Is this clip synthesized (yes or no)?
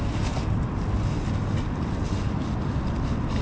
no